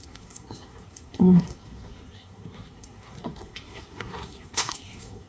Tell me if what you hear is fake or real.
fake